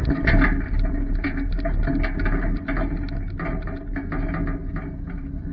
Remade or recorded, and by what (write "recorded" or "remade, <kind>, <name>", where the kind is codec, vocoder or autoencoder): recorded